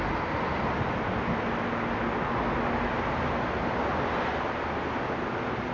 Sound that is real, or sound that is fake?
real